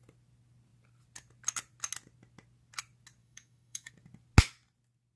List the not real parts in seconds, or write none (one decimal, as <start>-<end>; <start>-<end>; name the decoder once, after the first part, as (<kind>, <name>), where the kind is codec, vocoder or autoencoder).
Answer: 3.2-3.9 (autoencoder, DAC-VAE)